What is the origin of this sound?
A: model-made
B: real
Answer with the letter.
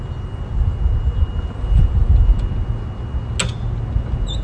B